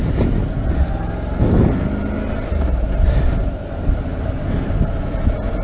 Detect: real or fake real